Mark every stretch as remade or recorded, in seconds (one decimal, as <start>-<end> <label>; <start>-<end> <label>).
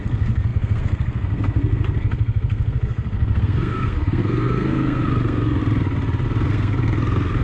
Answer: 0.0-5.6 remade; 5.6-6.5 recorded; 6.5-7.4 remade